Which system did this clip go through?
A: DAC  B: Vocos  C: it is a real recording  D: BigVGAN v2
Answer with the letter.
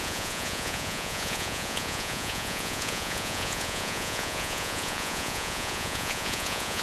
B